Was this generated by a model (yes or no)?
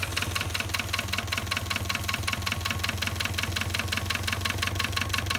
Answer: no